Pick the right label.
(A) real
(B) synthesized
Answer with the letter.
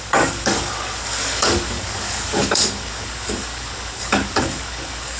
B